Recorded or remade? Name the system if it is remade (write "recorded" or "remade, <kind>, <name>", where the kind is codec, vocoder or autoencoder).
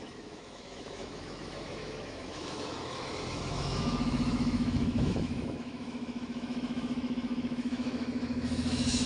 remade, autoencoder, DAC-VAE